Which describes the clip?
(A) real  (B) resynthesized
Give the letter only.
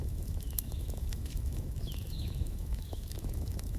B